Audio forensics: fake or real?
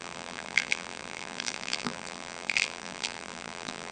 fake